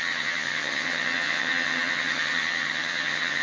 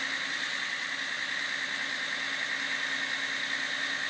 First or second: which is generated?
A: first